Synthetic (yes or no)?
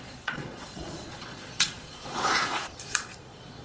yes